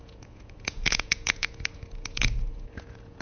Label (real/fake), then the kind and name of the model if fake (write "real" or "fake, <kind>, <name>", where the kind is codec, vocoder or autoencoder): fake, vocoder, Vocos